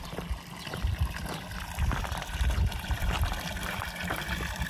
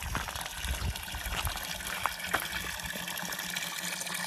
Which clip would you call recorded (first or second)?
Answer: second